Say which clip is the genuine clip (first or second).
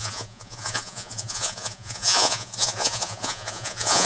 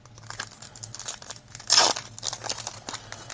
second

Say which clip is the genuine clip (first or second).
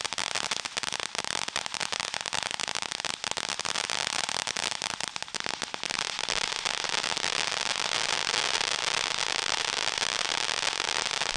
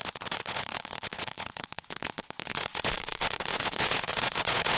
first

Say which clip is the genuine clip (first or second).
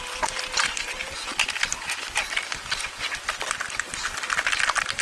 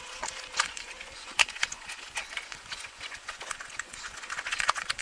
first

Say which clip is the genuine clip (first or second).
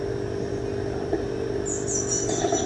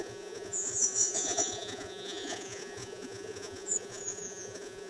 first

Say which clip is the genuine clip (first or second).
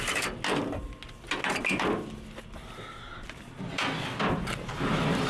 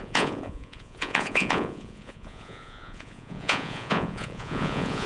first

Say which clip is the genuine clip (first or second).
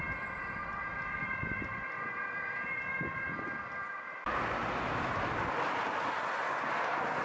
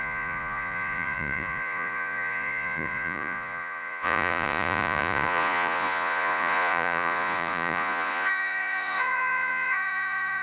first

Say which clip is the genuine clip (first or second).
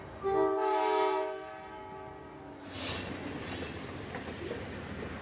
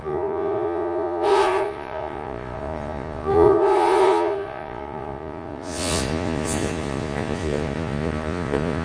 first